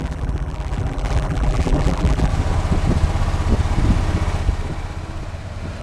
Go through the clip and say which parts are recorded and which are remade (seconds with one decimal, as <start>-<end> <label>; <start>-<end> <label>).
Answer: 0.0-2.3 remade; 2.3-5.8 recorded